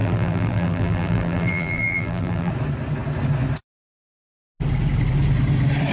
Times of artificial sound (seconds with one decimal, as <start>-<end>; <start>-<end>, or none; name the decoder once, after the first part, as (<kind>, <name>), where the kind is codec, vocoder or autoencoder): 0.0-2.5 (vocoder, BigVGAN v2)